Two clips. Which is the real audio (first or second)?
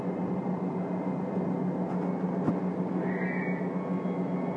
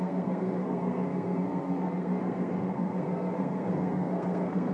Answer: first